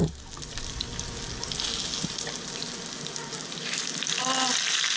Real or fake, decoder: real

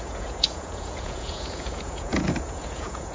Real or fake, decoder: fake, vocoder, Vocos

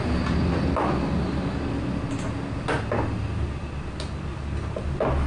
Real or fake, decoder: real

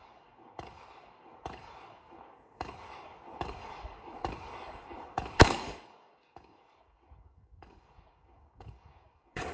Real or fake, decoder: fake, codec, DAC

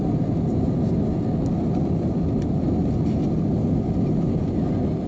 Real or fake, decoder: real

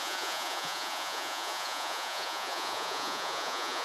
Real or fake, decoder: fake, vocoder, Vocos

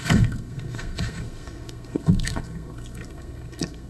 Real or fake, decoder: fake, codec, SNAC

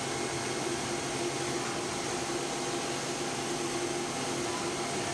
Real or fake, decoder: real